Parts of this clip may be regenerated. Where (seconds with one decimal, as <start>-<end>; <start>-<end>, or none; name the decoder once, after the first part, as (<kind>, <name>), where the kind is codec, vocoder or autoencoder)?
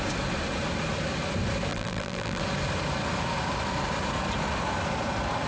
1.7-2.4 (vocoder, BigVGAN v2)